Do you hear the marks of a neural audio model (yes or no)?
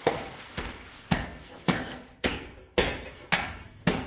yes